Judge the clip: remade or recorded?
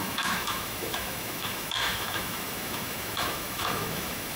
remade